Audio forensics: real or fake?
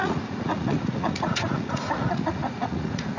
fake